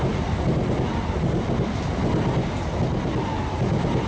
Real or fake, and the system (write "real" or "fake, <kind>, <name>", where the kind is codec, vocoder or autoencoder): real